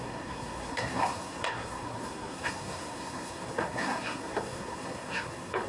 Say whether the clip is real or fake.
fake